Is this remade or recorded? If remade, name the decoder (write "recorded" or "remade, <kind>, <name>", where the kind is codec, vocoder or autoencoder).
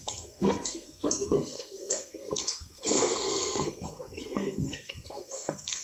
remade, codec, SNAC